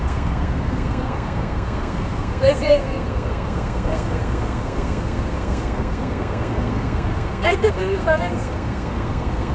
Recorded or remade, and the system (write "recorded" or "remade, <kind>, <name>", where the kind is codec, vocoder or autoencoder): remade, codec, SNAC